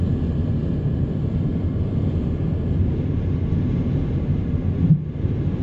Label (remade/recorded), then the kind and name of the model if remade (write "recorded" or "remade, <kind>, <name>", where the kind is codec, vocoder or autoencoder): recorded